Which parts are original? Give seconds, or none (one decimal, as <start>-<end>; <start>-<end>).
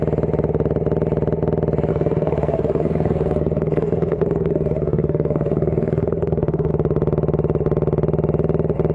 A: 0.0-1.9; 6.7-8.9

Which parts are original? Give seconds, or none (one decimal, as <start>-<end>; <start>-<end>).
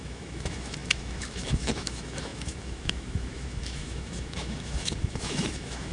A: none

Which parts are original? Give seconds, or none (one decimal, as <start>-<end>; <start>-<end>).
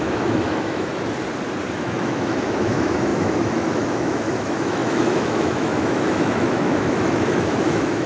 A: 0.9-1.7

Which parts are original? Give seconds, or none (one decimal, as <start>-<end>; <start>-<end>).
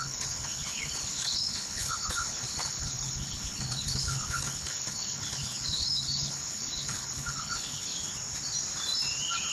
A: 7.9-9.5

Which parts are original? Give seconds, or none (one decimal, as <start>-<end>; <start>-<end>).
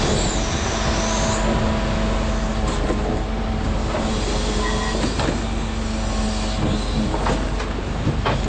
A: 0.0-8.5